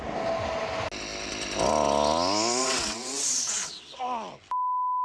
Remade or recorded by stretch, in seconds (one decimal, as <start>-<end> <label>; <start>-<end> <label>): 0.0-2.6 recorded; 2.6-4.0 remade; 4.0-5.0 recorded